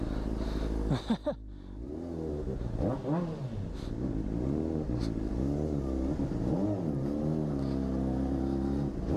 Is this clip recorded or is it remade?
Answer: recorded